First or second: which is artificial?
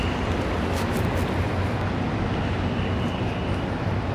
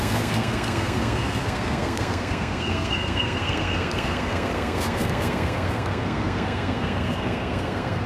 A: second